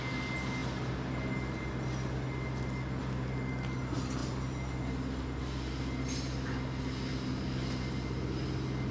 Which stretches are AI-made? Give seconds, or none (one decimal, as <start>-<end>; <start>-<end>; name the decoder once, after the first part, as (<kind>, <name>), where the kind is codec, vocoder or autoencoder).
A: none

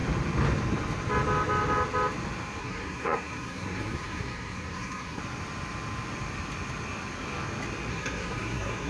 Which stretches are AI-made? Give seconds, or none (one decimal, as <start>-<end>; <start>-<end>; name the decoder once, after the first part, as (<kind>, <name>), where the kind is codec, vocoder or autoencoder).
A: 2.6-5.2 (codec, SNAC); 7.9-8.9